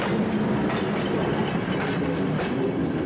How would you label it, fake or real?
real